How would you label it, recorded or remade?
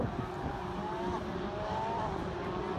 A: recorded